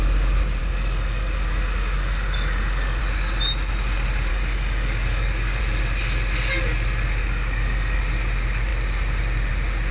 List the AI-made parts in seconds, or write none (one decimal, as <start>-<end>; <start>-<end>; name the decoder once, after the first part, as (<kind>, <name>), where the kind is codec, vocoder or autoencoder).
0.6-3.0 (codec, DAC); 4.3-5.6; 7.2-8.0